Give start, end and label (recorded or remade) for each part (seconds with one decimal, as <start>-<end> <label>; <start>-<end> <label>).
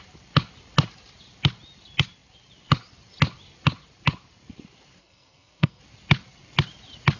0.0-5.0 recorded; 5.0-5.8 remade; 5.8-7.2 recorded